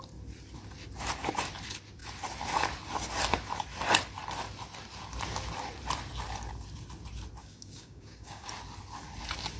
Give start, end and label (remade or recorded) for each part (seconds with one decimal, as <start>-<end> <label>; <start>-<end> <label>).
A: 0.0-7.4 recorded; 7.4-8.5 remade; 8.5-9.6 recorded